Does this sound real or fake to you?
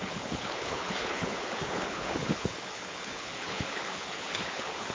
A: fake